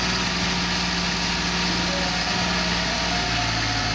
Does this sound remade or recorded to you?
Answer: recorded